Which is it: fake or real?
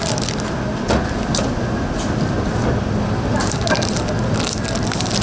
real